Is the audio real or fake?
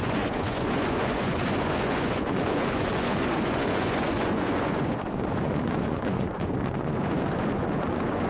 fake